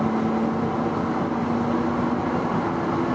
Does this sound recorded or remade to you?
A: recorded